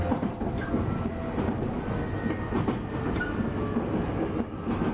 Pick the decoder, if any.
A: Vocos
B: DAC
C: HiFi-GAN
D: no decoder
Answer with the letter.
D